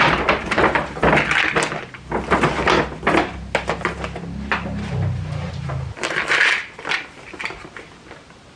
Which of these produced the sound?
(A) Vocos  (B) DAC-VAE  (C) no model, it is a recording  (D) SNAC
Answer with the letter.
C